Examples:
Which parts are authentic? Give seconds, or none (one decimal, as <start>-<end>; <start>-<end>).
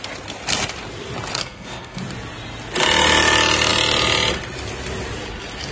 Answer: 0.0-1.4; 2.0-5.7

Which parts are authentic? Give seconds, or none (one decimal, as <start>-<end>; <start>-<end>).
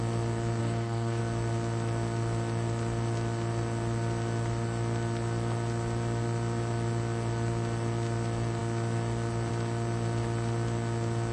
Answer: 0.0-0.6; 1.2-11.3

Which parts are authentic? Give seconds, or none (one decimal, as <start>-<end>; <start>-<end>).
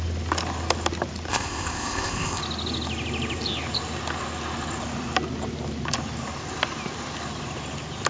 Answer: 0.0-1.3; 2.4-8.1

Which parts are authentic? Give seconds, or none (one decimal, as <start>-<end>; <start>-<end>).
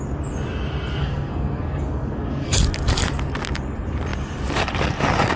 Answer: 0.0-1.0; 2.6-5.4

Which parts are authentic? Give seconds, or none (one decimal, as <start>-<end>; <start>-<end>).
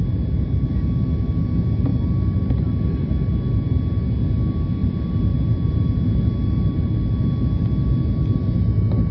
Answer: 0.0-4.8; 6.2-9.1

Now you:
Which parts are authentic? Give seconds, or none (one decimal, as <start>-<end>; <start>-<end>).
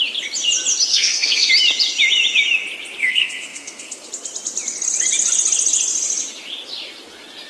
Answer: 0.0-0.9; 1.5-3.0; 4.1-7.5